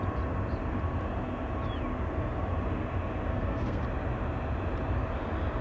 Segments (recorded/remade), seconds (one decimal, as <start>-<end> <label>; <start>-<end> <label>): 0.0-3.3 recorded; 3.3-3.8 remade; 3.8-5.6 recorded